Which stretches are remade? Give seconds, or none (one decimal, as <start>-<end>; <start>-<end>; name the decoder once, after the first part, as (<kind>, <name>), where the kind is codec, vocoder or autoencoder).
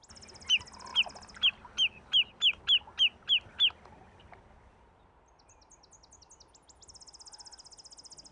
none